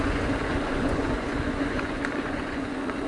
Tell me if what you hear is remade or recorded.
remade